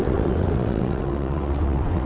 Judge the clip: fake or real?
fake